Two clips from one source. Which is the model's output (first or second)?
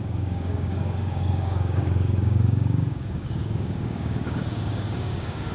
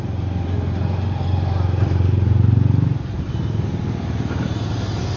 first